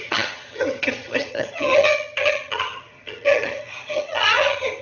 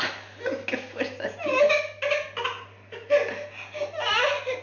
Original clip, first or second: second